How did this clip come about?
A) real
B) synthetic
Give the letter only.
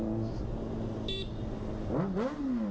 A